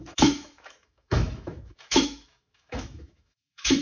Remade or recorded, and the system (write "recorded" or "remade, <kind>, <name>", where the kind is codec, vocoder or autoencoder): remade, autoencoder, DAC-VAE